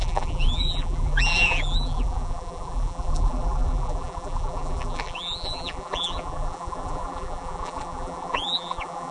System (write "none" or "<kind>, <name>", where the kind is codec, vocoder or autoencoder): vocoder, BigVGAN v2